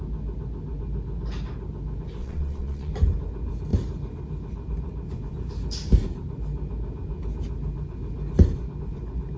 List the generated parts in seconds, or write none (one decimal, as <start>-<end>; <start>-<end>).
2.2-2.9